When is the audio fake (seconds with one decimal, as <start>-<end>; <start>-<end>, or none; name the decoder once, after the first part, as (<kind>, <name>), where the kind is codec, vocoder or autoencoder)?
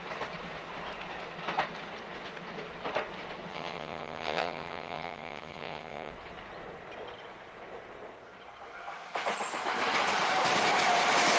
3.5-6.1 (vocoder, HiFi-GAN)